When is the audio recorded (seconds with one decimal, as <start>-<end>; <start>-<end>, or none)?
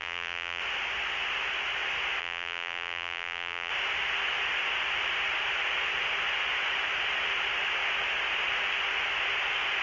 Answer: 0.6-2.2; 3.7-9.8